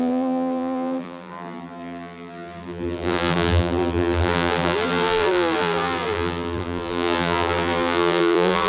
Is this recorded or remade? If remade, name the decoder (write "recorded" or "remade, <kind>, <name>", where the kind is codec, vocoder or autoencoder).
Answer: remade, vocoder, BigVGAN v2